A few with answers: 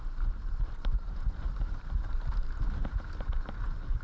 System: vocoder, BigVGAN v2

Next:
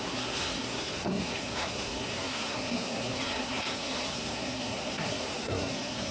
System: codec, SNAC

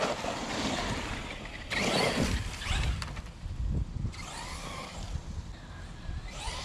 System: vocoder, BigVGAN v2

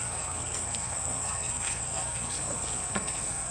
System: codec, SNAC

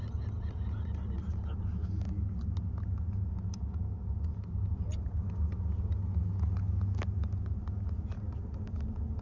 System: none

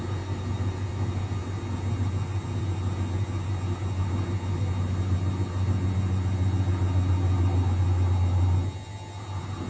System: none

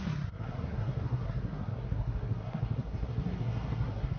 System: codec, SNAC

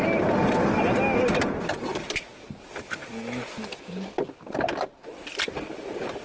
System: none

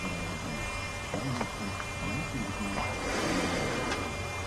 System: none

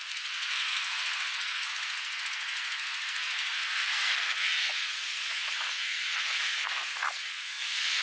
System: codec, SNAC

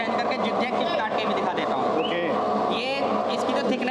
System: none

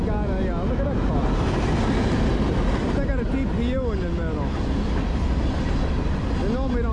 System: none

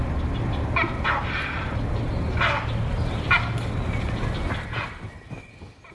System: none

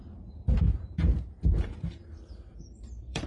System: vocoder, BigVGAN v2